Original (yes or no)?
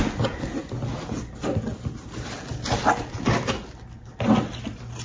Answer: yes